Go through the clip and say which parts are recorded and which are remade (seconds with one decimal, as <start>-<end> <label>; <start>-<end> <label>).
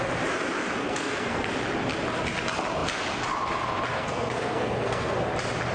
0.0-0.8 recorded; 0.8-1.5 remade; 1.5-3.9 recorded; 3.9-5.2 remade; 5.2-5.7 recorded